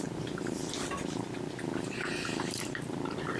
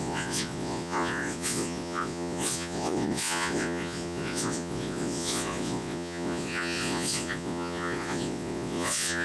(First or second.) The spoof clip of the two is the second